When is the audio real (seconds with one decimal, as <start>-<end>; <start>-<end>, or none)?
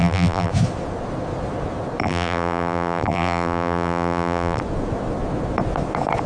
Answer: 0.5-2.0; 4.6-6.3